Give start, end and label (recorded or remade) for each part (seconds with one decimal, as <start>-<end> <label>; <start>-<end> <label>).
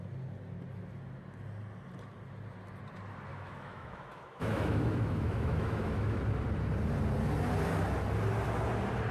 0.0-3.3 recorded; 3.3-6.2 remade; 6.2-9.1 recorded